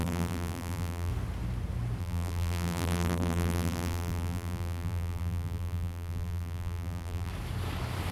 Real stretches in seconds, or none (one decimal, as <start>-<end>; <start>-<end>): 1.1-2.0; 7.3-8.1